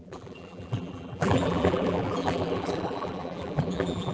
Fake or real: fake